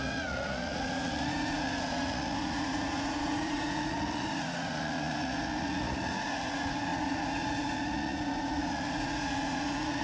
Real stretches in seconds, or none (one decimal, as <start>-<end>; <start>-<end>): none